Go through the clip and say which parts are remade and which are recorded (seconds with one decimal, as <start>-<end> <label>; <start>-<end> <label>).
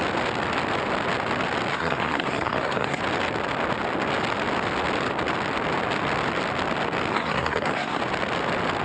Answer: 0.0-1.7 recorded; 1.7-3.0 remade; 3.0-7.1 recorded; 7.1-8.0 remade; 8.0-8.8 recorded